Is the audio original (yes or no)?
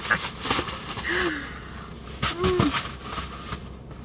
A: yes